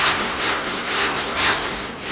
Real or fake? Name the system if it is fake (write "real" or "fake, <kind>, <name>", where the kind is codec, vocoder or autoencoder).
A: fake, codec, SNAC